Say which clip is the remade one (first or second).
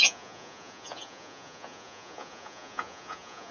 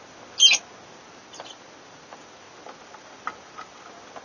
first